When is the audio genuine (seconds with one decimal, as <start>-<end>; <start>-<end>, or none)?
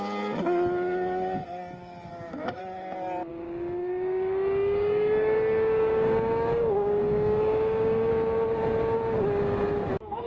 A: 0.0-2.1; 2.6-3.3; 8.1-10.3